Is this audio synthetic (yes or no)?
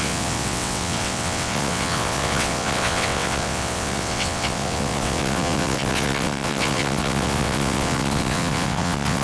yes